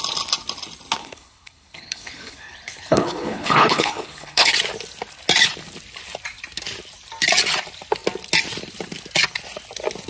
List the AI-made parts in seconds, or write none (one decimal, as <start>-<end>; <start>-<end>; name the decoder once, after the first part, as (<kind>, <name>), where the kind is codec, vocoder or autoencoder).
1.0-4.5 (codec, HILCodec)